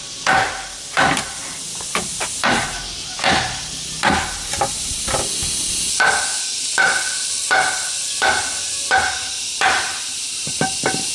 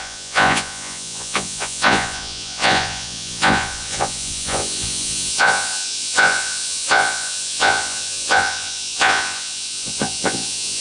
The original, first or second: first